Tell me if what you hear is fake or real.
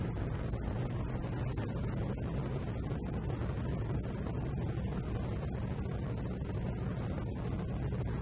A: real